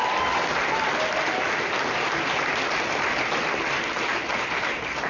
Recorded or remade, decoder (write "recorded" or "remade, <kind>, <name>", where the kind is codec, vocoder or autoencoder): recorded